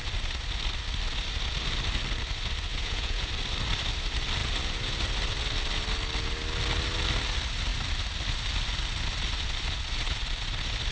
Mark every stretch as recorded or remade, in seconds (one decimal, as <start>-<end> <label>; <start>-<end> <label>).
0.0-2.7 recorded; 2.7-3.3 remade; 3.3-10.9 recorded